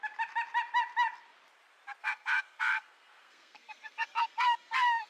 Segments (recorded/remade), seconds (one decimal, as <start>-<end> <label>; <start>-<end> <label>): 0.0-2.0 recorded; 2.0-5.1 remade